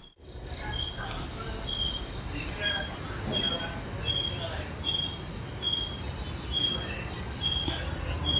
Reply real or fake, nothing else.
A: real